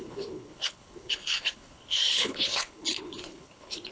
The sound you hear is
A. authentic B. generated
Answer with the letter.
B